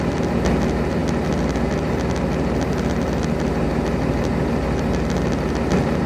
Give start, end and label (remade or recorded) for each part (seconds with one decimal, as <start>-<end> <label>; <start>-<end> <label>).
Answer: 0.0-6.1 recorded